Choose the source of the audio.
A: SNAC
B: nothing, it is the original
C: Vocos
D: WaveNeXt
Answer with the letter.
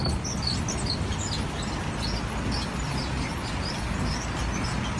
B